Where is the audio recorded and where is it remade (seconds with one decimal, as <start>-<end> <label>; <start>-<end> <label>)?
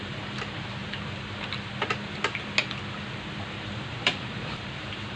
0.0-0.8 remade; 0.8-3.9 recorded; 3.9-5.2 remade